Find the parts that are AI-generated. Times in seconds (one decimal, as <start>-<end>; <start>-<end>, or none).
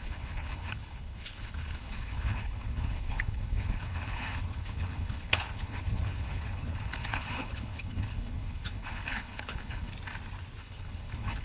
0.0-9.9; 10.6-11.4